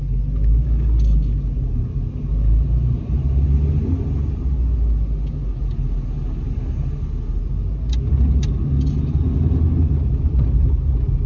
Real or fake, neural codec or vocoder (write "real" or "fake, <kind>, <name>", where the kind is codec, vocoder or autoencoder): real